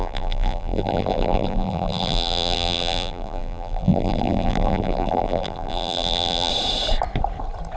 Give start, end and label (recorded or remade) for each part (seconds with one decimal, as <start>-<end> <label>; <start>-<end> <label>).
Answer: 0.0-6.5 remade; 6.5-7.8 recorded